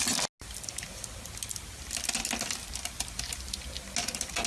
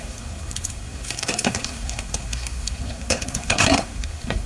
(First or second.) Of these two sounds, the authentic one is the first